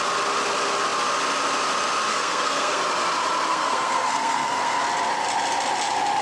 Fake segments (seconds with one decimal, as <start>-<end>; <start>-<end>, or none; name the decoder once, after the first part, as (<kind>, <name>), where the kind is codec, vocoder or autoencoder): 2.1-2.8 (codec, SNAC); 3.5-4.8